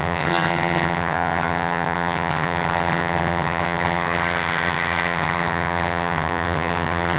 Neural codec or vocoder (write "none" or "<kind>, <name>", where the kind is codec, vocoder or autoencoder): vocoder, HiFi-GAN